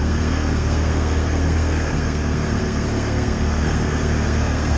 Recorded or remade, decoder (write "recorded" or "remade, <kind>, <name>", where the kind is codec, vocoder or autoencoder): remade, codec, SNAC